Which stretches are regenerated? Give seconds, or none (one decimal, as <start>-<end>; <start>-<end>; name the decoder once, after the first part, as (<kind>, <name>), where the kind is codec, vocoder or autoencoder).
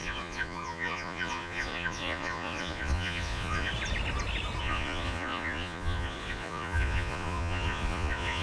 0.0-3.7 (vocoder, Vocos); 4.6-8.4